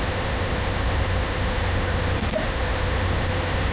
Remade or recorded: remade